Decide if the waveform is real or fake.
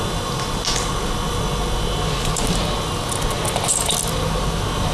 real